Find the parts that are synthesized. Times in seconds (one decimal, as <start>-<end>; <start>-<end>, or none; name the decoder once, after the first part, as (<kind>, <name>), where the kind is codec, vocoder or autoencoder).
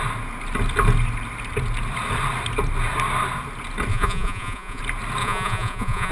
3.9-4.8 (vocoder, Vocos); 5.2-6.1